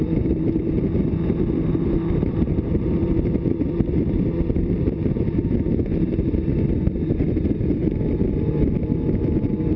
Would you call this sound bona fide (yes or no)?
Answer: no